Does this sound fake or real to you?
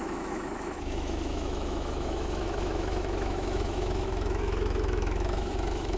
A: fake